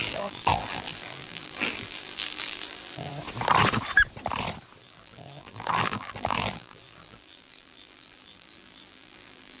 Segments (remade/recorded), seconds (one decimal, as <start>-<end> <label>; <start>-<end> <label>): 0.0-3.1 remade; 3.1-4.8 recorded; 4.8-9.6 remade